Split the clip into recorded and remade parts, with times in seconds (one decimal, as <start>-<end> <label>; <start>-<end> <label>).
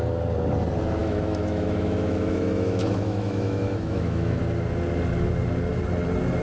0.0-1.0 recorded; 1.0-4.4 remade; 4.4-6.4 recorded